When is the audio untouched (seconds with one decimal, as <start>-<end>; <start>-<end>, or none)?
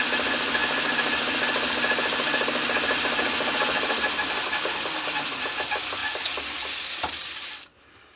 0.0-8.2